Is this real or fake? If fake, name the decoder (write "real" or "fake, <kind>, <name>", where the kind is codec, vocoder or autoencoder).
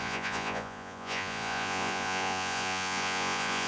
fake, vocoder, Vocos